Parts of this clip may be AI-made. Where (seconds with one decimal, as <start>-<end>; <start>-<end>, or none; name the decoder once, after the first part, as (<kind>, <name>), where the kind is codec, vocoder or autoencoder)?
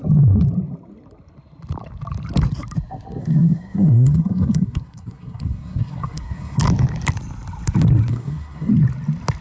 3.2-6.6 (codec, SNAC); 8.1-8.7